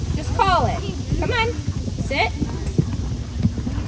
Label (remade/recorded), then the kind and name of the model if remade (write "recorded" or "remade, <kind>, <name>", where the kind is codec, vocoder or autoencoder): recorded